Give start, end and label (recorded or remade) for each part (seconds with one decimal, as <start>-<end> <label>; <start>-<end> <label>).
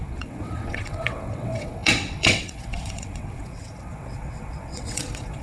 0.0-5.4 remade